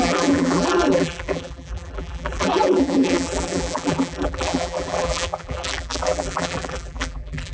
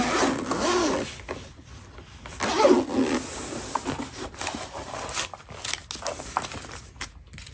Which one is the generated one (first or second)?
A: first